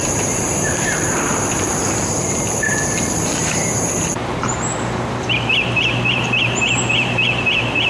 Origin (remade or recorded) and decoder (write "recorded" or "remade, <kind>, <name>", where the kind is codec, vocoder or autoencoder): remade, vocoder, BigVGAN v2